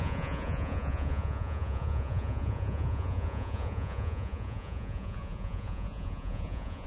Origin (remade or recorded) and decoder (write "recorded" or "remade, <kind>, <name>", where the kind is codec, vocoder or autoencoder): remade, vocoder, Vocos